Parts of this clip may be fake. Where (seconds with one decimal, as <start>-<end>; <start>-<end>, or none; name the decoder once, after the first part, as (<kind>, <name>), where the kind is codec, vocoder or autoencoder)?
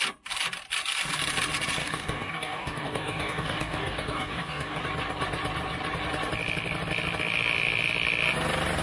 1.8-4.8 (codec, DAC)